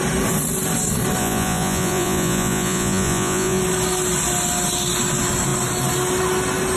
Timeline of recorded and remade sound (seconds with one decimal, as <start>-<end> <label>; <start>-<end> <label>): 0.0-1.2 recorded; 1.2-3.6 remade; 3.6-6.8 recorded